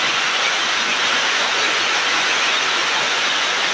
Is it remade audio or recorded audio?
remade